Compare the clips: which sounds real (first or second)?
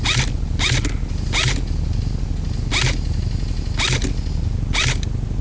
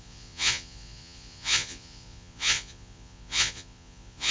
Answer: first